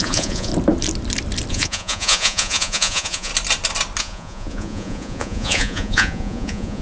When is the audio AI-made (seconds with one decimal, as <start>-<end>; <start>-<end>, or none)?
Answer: 0.0-0.5; 1.5-3.3; 4.0-6.8